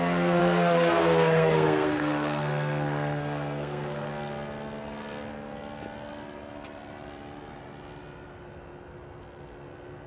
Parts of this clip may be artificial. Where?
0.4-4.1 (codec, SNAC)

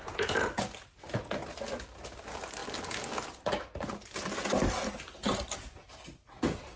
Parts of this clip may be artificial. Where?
none

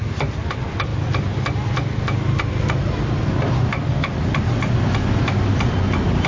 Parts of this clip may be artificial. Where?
none

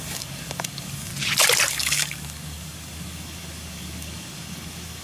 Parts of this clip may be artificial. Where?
0.0-1.1 (codec, DAC); 1.7-5.0

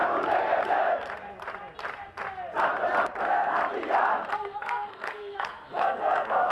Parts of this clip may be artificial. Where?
3.2-3.6 (codec, SNAC); 4.3-6.5